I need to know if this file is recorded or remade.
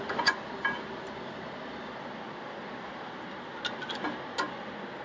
recorded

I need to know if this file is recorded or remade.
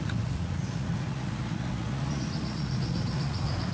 remade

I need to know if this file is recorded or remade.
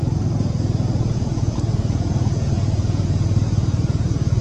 remade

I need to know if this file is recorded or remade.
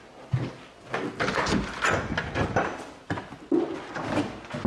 remade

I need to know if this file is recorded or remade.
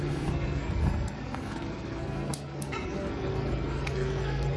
remade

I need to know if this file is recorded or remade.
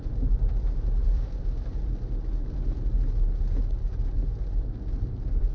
recorded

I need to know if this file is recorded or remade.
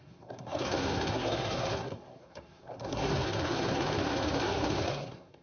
remade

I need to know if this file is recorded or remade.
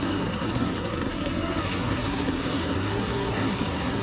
remade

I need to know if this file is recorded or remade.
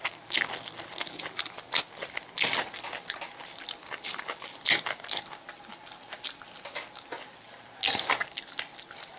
recorded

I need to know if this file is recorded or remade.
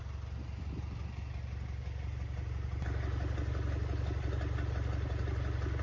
recorded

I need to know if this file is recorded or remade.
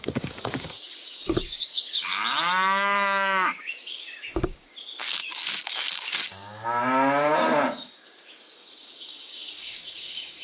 remade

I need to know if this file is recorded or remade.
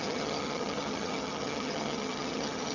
remade